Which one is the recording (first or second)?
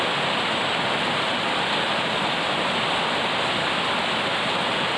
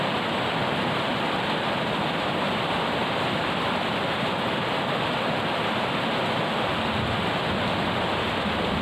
first